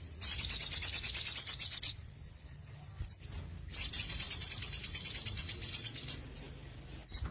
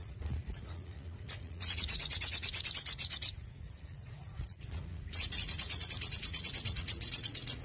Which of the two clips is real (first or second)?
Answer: first